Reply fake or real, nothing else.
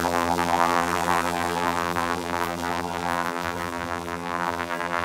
fake